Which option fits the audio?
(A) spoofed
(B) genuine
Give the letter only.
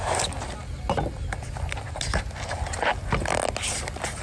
B